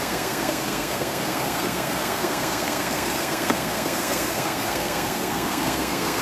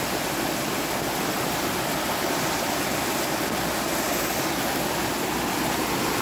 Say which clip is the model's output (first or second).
first